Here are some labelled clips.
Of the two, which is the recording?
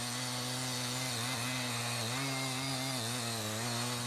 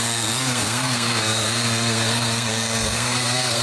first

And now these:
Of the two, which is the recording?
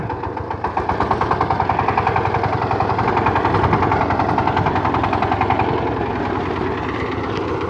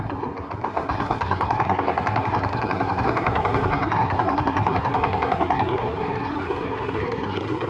first